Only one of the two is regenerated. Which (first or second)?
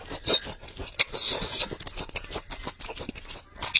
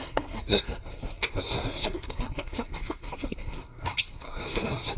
second